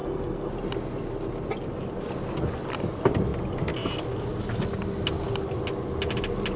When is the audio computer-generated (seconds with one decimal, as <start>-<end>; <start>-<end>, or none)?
0.0-0.5